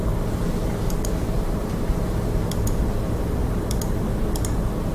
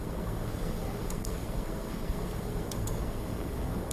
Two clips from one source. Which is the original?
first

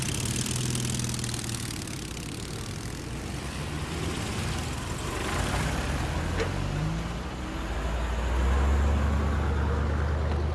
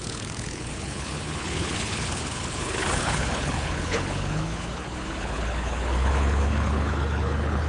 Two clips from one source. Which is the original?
first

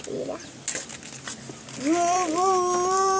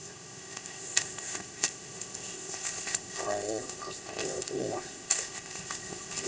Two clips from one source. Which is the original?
first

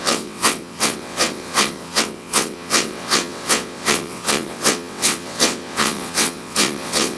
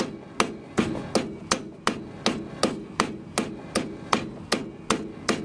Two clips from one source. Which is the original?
second